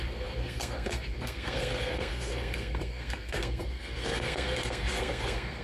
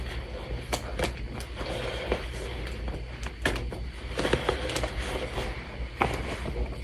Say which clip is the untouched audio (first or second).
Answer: second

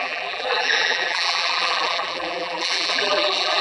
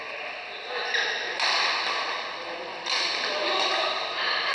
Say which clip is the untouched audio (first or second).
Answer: second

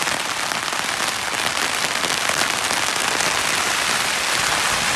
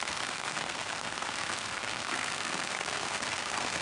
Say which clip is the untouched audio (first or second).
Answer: first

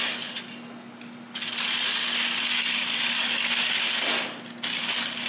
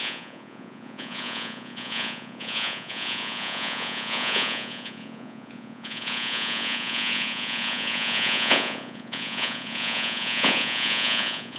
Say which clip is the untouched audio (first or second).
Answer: first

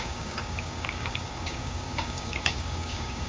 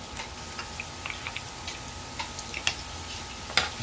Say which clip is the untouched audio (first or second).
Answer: second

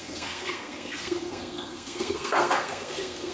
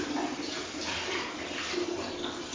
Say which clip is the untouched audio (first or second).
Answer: second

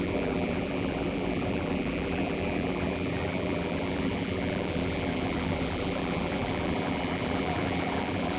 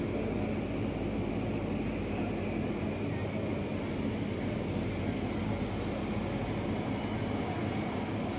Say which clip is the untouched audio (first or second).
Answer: second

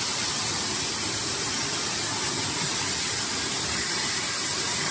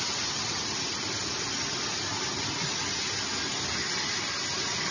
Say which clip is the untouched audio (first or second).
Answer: second